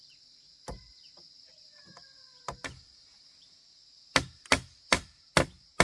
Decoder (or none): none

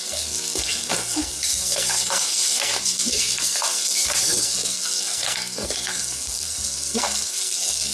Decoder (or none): codec, SNAC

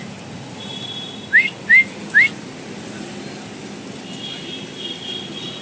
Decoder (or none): none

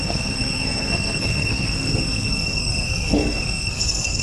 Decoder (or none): codec, SNAC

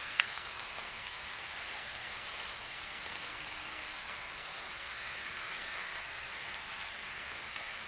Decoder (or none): codec, SNAC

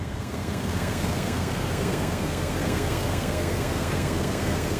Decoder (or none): codec, SNAC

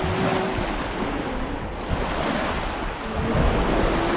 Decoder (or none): none